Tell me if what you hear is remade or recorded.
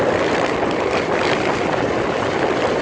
recorded